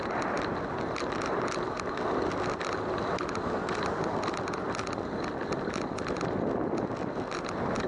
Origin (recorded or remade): recorded